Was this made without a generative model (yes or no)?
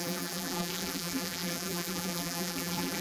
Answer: no